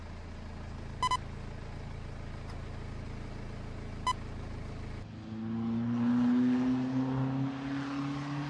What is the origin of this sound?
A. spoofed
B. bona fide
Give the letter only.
B